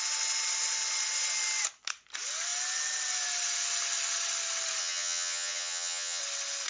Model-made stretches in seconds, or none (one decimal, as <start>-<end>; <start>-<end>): 4.8-6.2